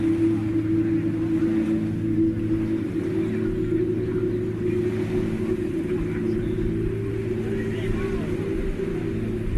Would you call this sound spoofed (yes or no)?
no